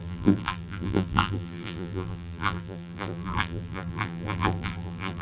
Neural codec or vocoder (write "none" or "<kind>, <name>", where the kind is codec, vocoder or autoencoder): vocoder, BigVGAN v2